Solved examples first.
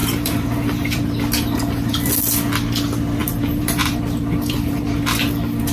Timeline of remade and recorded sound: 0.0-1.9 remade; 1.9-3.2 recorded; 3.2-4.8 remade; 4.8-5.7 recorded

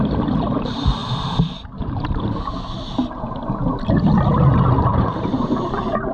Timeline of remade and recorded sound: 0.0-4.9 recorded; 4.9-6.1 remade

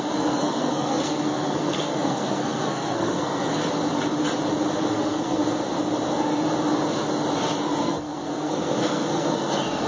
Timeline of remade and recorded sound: 0.0-3.6 remade; 3.6-4.9 recorded; 4.9-5.4 remade; 5.4-7.8 recorded; 7.8-9.9 remade